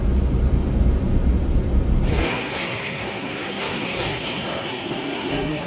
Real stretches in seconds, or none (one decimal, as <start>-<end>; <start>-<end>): 0.0-2.1